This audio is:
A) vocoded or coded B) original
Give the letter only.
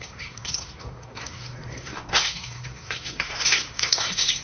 A